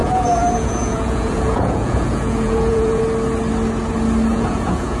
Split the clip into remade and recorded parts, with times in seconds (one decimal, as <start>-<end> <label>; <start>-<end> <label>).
0.0-3.0 remade; 3.0-4.3 recorded; 4.3-5.0 remade